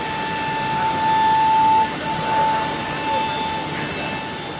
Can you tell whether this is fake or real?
real